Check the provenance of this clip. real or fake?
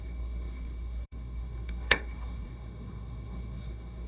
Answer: fake